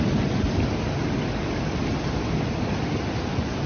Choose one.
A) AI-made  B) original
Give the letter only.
B